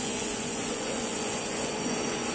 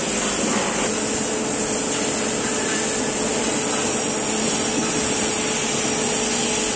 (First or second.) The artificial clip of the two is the first